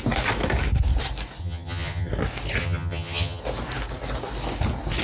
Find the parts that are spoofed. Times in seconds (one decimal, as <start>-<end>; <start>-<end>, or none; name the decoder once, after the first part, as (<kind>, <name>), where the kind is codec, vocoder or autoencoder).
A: 1.4-2.1 (vocoder, HiFi-GAN); 2.6-3.4